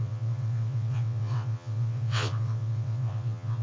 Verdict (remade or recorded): remade